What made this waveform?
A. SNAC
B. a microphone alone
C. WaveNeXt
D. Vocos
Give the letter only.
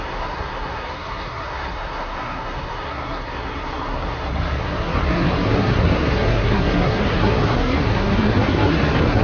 A